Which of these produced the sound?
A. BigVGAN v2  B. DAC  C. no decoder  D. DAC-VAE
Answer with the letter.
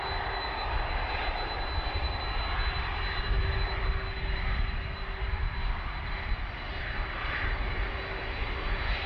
C